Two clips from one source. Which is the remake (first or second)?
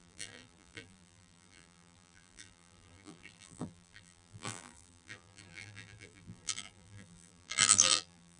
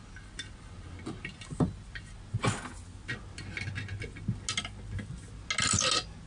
first